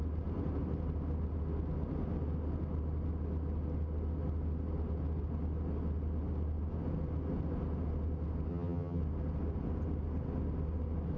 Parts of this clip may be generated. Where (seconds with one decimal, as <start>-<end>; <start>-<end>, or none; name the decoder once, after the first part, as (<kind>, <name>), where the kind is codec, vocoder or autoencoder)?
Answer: 8.5-9.0 (vocoder, HiFi-GAN)

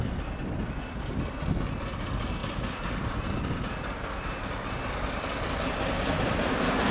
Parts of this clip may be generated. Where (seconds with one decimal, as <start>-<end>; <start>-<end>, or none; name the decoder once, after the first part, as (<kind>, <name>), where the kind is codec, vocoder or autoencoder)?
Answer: none